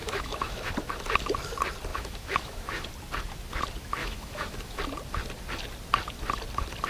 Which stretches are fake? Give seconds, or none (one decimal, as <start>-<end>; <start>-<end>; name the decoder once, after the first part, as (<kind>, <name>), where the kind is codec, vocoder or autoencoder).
0.0-0.7 (autoencoder, DAC-VAE); 1.9-2.9; 4.0-4.8

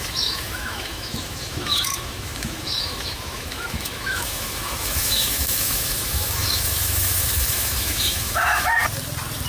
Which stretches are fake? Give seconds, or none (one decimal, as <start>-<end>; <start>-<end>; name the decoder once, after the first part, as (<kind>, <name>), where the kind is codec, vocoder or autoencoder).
0.0-8.8 (autoencoder, DAC-VAE)

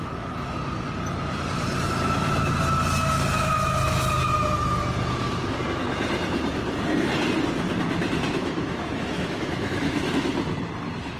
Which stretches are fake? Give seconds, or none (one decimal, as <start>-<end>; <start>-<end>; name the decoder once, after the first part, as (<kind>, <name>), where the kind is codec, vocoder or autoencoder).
8.4-10.3 (autoencoder, DAC-VAE)

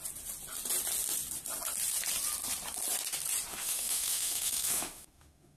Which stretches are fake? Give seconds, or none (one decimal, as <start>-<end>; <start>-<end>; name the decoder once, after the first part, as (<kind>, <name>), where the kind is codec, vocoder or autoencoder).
3.5-5.6 (autoencoder, DAC-VAE)

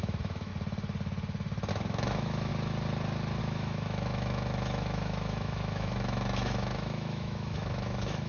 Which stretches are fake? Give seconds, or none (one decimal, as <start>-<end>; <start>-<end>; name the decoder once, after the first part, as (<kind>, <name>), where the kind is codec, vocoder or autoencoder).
0.0-0.5 (autoencoder, DAC-VAE); 1.7-2.5; 3.4-8.3

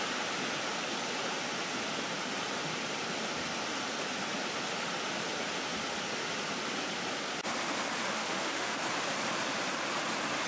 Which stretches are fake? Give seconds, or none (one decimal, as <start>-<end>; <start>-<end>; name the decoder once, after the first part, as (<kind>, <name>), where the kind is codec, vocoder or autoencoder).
8.1-8.8 (autoencoder, DAC-VAE)

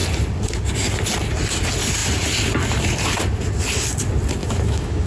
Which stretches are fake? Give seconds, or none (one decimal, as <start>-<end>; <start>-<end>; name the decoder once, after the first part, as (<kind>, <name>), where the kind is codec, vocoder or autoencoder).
4.4-5.1 (autoencoder, DAC-VAE)